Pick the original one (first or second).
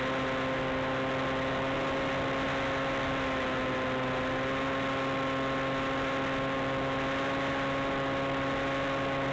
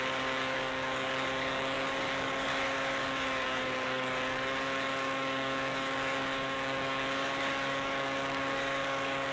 first